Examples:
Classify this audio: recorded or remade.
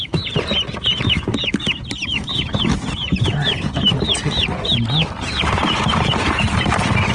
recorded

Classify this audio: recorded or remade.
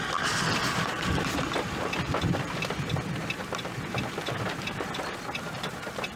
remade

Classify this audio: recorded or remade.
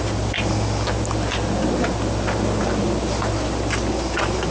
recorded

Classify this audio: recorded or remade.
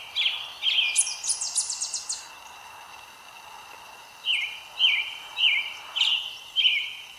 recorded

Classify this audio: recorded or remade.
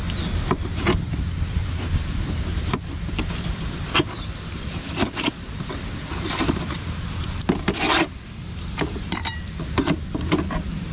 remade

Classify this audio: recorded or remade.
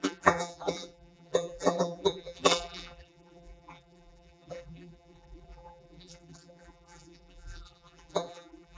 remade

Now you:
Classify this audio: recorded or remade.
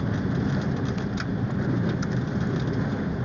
recorded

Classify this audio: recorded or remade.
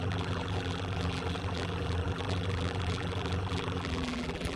remade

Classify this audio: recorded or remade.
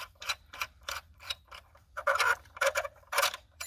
remade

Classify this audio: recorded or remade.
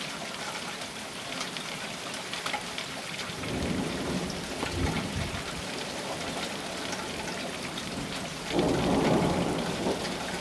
remade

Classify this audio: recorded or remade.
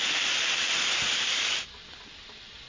recorded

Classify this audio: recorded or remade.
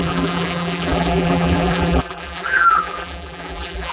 remade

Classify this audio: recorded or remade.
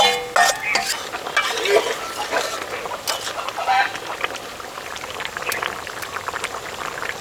recorded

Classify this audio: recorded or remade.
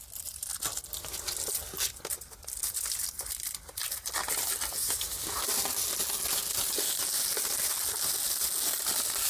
recorded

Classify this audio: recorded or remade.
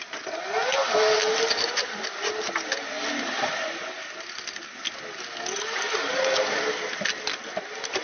recorded